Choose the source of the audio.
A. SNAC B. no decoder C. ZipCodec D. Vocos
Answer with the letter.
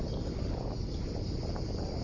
B